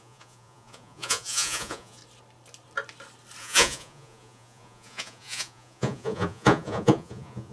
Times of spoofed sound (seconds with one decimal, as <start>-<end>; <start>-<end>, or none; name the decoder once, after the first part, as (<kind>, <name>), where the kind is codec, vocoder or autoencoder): 0.0-2.0 (vocoder, Vocos); 3.4-7.5